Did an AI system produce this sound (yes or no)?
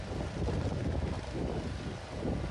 yes